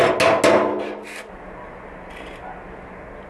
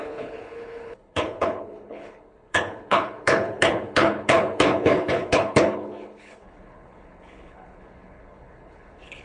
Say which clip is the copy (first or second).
second